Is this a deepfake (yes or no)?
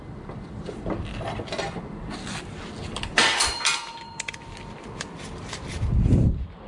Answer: yes